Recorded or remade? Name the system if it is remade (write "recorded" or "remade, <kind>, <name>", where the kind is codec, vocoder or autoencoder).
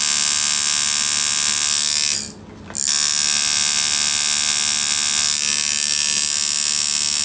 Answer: recorded